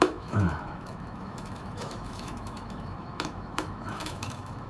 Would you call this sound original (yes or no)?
no